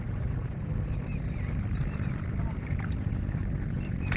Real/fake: fake